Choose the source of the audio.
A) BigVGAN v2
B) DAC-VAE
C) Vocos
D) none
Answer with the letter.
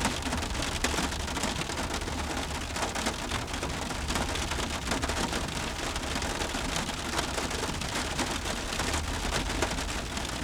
D